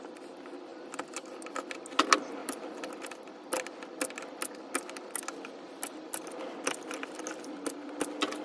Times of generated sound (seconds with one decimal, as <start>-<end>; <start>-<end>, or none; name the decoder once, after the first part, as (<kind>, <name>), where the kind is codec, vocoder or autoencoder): 0.7-1.5 (vocoder, BigVGAN v2); 2.4-2.9